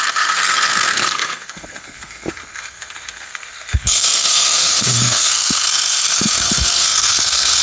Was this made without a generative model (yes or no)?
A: no